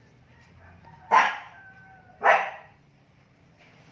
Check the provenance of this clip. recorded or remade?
recorded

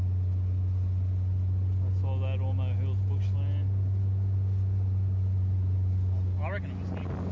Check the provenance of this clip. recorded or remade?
recorded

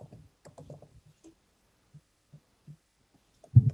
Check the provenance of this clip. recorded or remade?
recorded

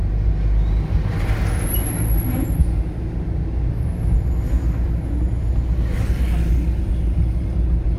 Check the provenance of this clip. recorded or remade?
recorded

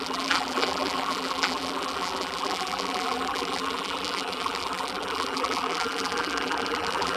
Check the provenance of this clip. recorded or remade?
remade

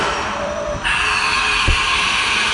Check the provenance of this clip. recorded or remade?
remade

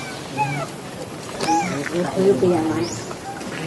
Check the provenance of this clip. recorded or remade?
recorded